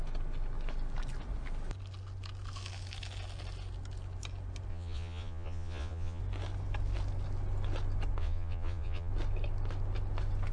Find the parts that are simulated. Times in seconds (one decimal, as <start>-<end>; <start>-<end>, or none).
4.7-6.2; 8.2-9.1